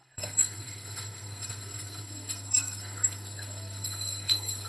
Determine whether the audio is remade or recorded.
remade